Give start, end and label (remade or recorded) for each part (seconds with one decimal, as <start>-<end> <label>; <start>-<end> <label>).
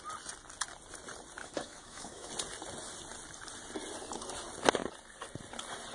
0.0-1.4 recorded; 1.4-2.3 remade; 2.3-5.9 recorded